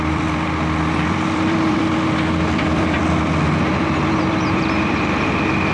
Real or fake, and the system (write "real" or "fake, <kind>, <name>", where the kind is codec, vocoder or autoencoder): fake, vocoder, BigVGAN v2